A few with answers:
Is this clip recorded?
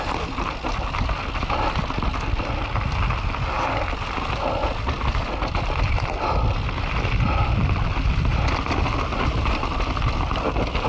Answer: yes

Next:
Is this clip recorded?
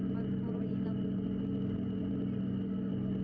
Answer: yes